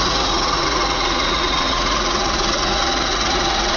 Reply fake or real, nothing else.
fake